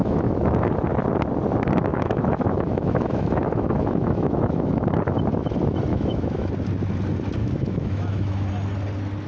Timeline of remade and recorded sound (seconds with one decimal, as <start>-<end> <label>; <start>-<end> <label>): 0.0-0.7 remade; 0.7-1.9 recorded; 1.9-5.0 remade; 5.0-5.9 recorded; 5.9-6.5 remade; 6.5-7.4 recorded; 7.4-8.5 remade; 8.5-9.3 recorded